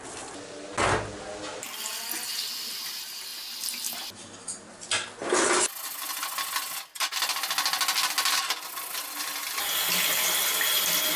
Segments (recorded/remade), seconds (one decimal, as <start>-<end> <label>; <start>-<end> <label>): 0.0-11.2 recorded